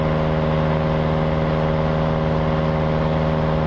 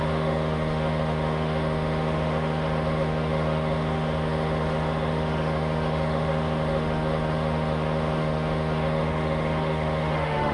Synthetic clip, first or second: second